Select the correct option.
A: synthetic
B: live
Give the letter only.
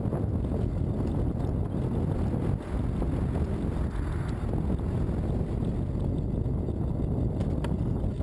B